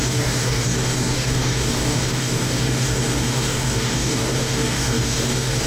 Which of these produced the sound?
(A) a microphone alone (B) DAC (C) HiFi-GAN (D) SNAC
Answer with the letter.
B